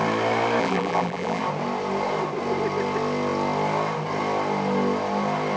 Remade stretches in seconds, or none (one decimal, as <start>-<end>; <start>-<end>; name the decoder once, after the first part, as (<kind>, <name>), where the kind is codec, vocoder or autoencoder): 0.6-1.4 (vocoder, BigVGAN v2)